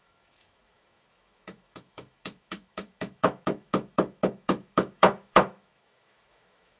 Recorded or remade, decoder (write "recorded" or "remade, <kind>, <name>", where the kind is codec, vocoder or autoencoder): remade, autoencoder, DAC-VAE